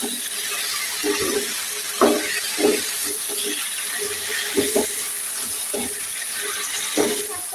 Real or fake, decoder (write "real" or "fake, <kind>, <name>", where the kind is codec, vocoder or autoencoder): real